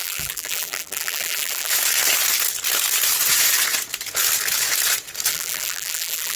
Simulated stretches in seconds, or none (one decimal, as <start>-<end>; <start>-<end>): 0.0-1.7; 5.3-6.4